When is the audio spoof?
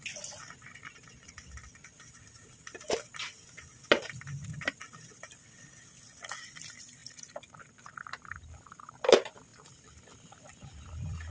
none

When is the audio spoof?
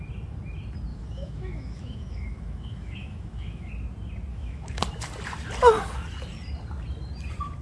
0.9-3.7 (autoencoder, DAC-VAE); 4.3-4.8